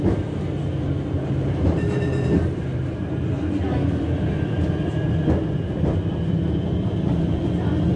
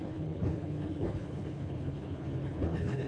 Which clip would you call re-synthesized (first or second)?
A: second